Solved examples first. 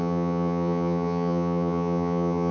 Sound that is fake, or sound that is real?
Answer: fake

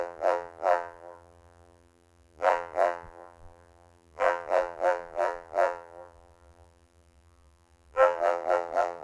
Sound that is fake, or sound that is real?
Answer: fake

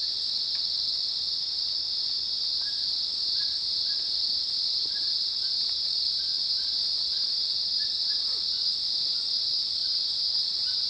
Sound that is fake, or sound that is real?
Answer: real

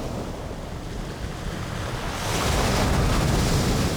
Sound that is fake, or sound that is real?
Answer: real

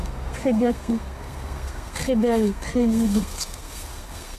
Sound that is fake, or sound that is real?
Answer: fake